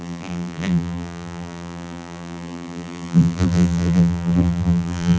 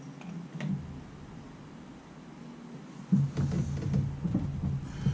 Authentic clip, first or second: second